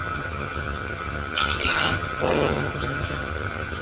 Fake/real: fake